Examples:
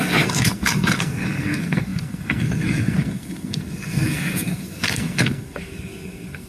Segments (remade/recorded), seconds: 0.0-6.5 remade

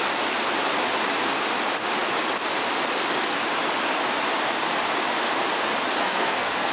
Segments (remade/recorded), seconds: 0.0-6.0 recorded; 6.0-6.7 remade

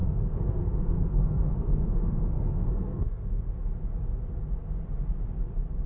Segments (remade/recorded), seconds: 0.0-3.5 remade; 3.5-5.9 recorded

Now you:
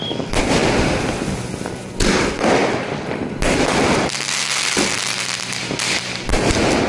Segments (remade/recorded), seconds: 0.0-6.9 recorded

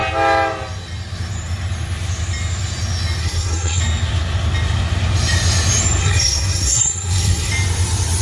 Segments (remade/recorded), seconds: 0.0-3.2 recorded; 3.2-3.8 remade; 3.8-6.0 recorded; 6.0-7.5 remade; 7.5-8.2 recorded

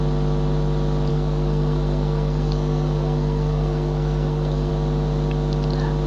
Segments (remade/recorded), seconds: 0.0-1.1 recorded; 1.1-4.7 remade; 4.7-6.1 recorded

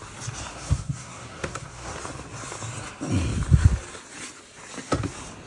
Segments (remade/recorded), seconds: 0.0-0.5 recorded; 0.5-2.0 remade; 2.0-5.5 recorded

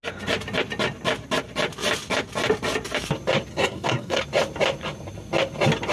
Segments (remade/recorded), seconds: 0.0-3.5 recorded; 3.5-4.2 remade; 4.2-5.9 recorded